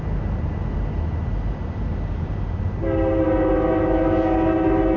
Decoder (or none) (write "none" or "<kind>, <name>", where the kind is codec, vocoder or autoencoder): none